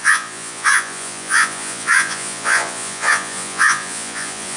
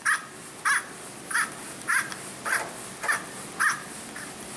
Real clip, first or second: second